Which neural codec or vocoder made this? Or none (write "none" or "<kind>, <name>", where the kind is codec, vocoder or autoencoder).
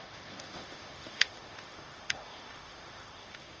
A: autoencoder, DAC-VAE